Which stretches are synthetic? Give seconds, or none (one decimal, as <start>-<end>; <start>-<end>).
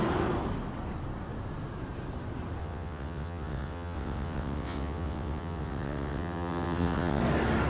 2.6-7.2